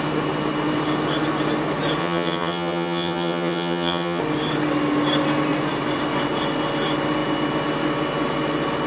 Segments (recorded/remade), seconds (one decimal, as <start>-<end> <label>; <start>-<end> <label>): 0.0-2.0 recorded; 2.0-4.2 remade; 4.2-8.9 recorded